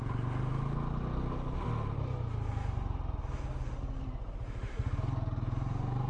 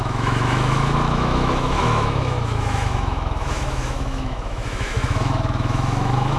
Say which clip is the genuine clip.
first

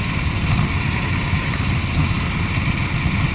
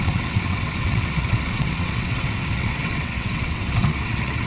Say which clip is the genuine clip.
first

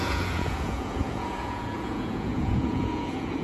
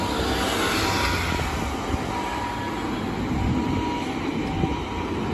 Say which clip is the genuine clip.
second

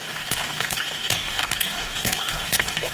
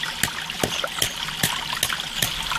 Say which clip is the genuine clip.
second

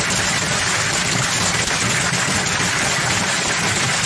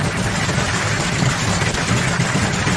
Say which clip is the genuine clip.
first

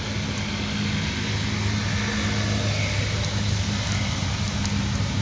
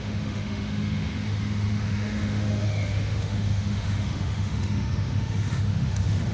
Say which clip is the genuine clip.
first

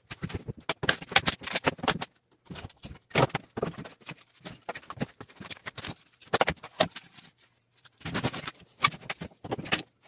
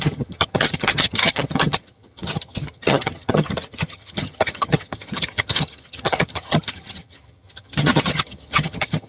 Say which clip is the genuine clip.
first